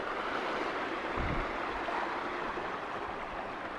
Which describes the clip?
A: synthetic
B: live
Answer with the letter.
B